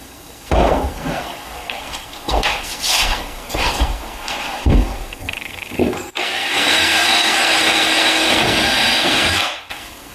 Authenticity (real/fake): fake